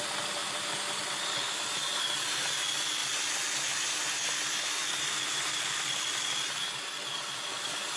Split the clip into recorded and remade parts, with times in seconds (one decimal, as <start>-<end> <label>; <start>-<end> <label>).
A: 0.0-8.0 recorded